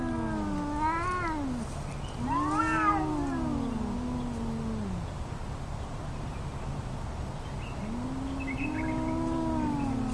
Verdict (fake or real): real